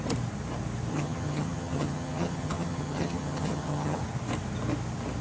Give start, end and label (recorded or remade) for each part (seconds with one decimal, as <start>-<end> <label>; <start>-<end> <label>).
0.0-0.9 recorded; 0.9-4.0 remade; 4.0-5.2 recorded